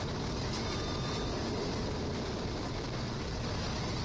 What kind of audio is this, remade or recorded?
recorded